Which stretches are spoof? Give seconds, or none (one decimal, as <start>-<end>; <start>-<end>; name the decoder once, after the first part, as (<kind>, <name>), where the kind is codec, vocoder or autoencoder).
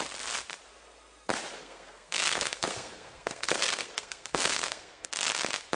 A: 1.6-5.1 (codec, SNAC)